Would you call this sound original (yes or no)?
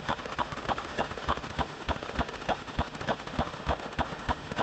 no